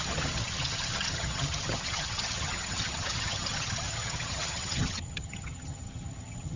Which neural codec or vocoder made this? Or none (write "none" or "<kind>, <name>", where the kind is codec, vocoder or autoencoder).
vocoder, HiFi-GAN